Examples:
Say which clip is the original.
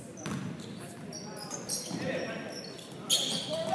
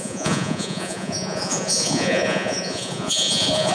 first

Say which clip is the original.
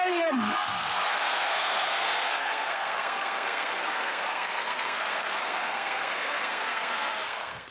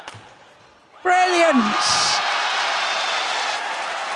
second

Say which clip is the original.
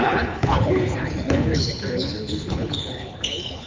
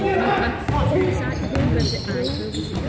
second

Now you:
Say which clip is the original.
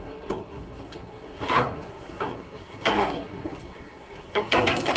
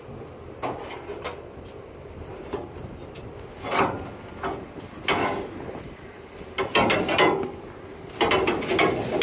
second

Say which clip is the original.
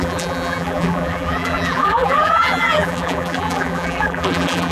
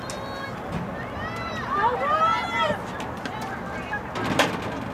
second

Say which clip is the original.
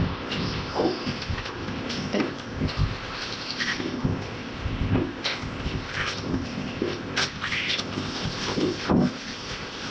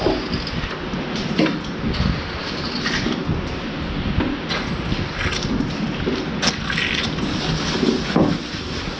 second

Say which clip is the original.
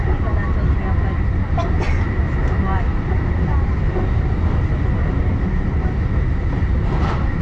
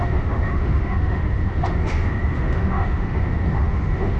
first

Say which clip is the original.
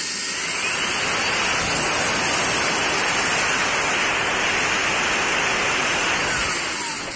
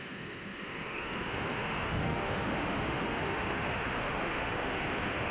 first